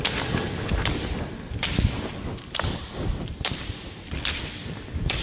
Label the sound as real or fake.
real